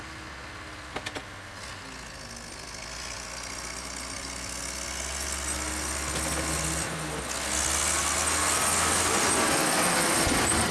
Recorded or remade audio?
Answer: recorded